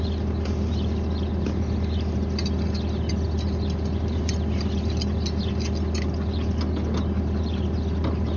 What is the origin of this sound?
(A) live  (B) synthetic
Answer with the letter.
A